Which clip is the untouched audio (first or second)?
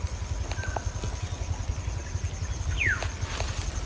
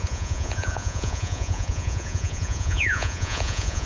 first